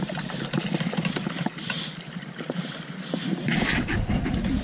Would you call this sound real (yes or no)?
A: no